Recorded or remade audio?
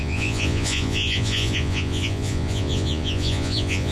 remade